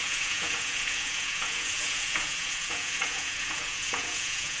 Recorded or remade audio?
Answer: remade